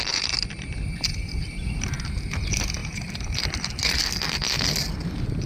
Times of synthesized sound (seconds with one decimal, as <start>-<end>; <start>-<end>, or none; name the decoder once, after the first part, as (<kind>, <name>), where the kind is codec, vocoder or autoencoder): none